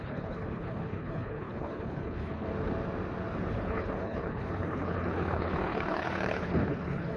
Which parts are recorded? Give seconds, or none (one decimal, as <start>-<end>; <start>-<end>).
2.5-3.5